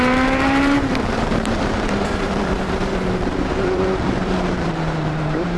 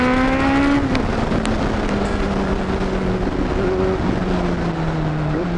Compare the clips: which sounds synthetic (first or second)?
first